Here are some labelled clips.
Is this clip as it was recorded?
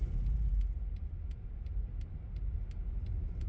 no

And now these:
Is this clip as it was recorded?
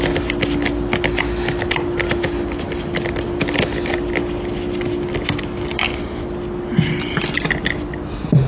yes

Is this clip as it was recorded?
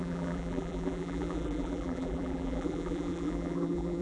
no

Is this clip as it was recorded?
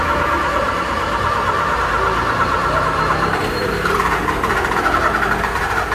yes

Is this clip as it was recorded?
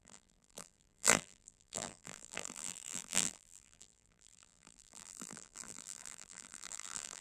no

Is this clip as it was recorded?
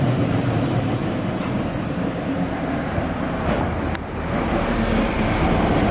no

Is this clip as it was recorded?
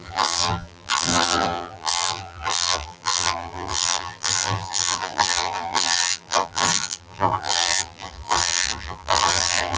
no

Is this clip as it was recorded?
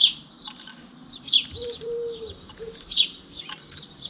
no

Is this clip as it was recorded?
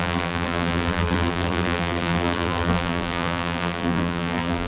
no